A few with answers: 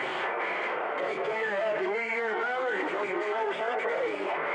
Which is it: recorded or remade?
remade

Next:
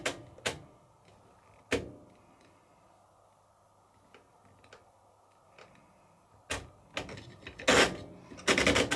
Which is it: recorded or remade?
recorded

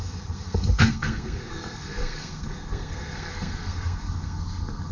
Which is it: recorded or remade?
remade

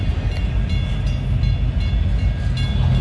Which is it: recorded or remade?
recorded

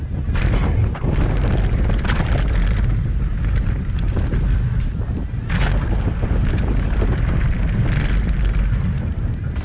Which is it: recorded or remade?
recorded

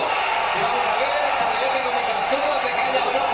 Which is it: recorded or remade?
recorded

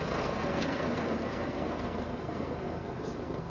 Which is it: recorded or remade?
remade